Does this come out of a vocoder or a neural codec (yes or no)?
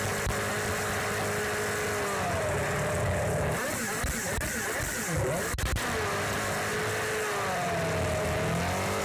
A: no